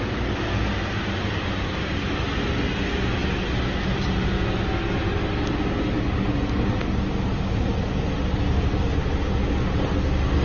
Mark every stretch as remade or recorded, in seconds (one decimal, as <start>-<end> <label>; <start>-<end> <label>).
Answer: 0.0-10.4 recorded